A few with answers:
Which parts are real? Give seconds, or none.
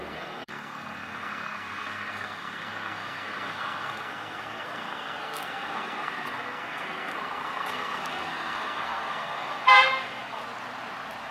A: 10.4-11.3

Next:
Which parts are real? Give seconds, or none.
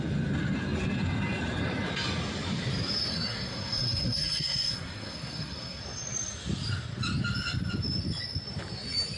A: 0.0-3.1; 5.8-9.2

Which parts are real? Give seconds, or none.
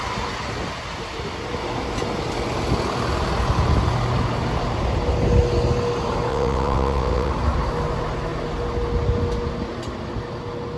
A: 0.0-6.3; 7.3-10.8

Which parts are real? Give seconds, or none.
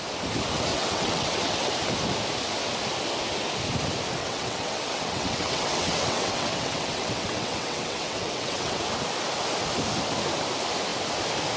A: 0.0-0.7; 1.7-4.2; 8.8-11.6